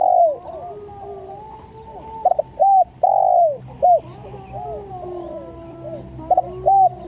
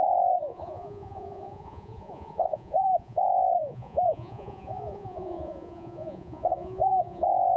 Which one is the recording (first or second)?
first